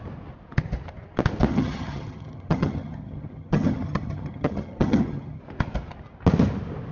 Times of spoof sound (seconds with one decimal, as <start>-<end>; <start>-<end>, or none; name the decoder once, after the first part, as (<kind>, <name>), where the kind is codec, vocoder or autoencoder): 1.5-5.4 (vocoder, HiFi-GAN)